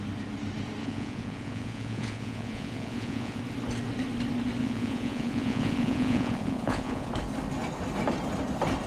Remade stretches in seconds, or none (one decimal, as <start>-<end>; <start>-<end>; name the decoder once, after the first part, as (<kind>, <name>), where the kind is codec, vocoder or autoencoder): 0.8-3.4 (vocoder, Vocos); 4.6-7.1